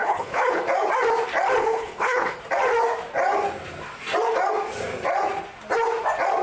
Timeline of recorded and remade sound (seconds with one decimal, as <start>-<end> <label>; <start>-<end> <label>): 0.0-0.6 remade; 0.6-1.6 recorded; 1.6-2.4 remade; 2.4-6.4 recorded